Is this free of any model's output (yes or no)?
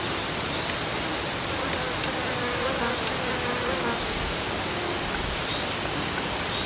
yes